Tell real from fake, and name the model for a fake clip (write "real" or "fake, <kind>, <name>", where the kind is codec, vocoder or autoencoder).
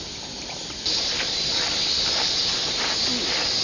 real